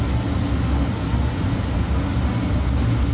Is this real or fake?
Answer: real